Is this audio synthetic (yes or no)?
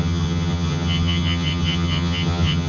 yes